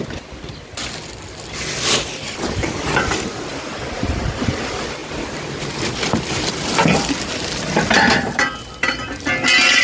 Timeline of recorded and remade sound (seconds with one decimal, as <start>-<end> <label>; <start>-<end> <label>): 0.0-3.5 recorded; 3.5-4.2 remade; 4.2-9.8 recorded